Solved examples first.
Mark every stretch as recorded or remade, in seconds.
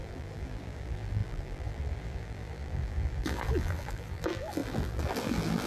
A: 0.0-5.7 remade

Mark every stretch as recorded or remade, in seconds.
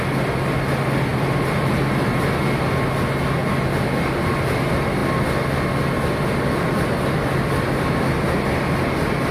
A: 0.0-1.1 recorded; 1.1-1.8 remade; 1.8-9.3 recorded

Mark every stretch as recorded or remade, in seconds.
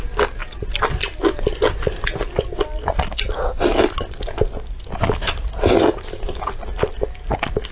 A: 0.0-0.4 recorded; 0.4-1.0 remade; 1.0-7.7 recorded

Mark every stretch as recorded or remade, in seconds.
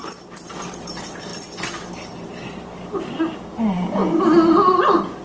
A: 0.0-1.3 remade; 1.3-1.9 recorded; 1.9-4.0 remade; 4.0-4.5 recorded; 4.5-5.2 remade